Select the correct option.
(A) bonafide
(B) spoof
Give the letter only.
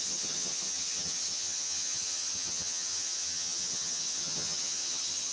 B